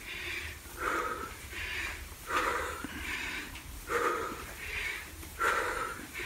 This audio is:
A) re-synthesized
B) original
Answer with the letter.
A